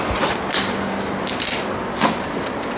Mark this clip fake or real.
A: real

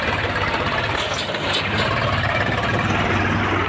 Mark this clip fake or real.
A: real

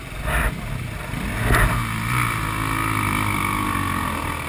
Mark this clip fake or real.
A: real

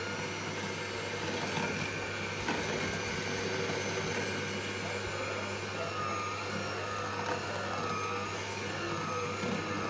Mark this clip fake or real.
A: real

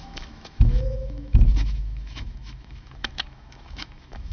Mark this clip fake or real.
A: fake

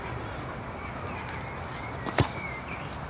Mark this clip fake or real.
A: real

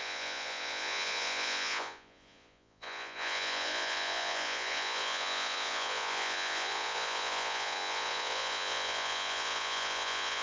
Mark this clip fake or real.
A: fake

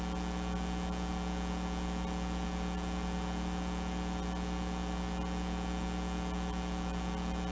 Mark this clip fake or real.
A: real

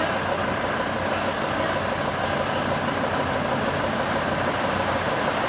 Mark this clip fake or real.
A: real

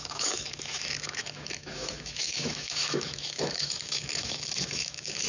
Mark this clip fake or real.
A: fake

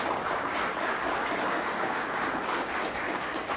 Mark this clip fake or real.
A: fake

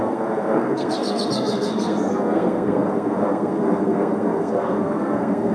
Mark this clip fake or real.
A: fake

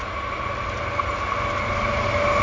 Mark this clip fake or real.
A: real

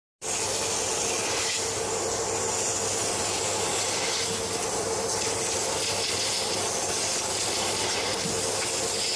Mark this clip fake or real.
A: real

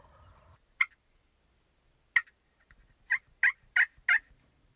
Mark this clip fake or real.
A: real